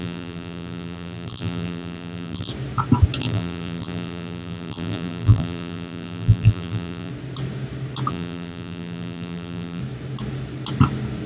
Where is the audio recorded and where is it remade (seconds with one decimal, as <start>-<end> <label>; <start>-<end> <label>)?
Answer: 0.0-2.5 remade; 2.5-3.2 recorded; 3.2-7.1 remade; 7.1-8.1 recorded; 8.1-9.8 remade; 9.8-11.3 recorded